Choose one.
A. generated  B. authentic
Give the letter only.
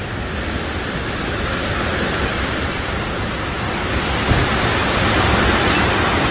B